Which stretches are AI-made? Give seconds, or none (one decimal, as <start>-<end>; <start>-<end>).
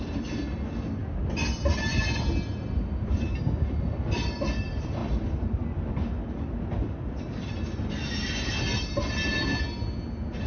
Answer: none